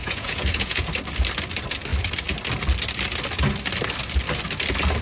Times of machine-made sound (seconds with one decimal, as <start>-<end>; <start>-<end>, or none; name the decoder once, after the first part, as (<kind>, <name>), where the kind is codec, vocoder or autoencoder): 0.0-0.9 (vocoder, Vocos)